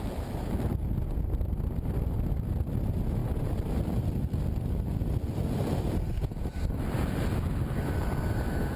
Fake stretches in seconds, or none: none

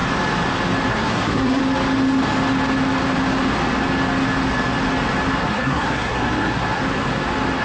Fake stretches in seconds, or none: 0.9-1.6 (codec, SNAC); 5.4-6.8

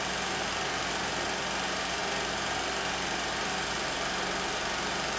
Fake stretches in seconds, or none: none